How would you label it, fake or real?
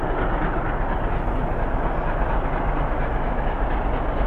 real